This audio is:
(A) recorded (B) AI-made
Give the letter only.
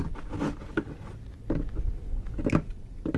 A